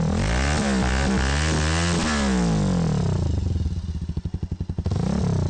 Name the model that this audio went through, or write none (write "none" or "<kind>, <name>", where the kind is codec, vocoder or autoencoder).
none